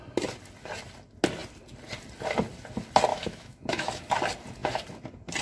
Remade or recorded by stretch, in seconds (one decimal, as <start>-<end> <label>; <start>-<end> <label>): 0.0-3.1 recorded; 3.1-4.1 remade; 4.1-5.4 recorded